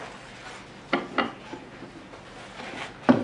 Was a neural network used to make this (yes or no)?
no